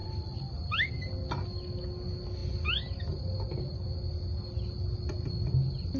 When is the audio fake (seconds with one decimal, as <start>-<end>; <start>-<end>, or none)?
0.0-0.9